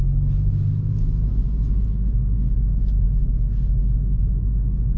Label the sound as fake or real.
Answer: real